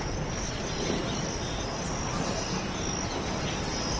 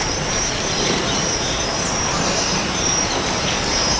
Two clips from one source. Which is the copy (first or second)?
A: second